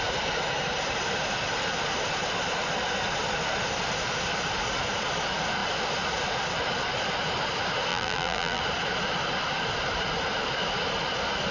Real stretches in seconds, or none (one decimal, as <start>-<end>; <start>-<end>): 0.0-7.9; 8.6-11.5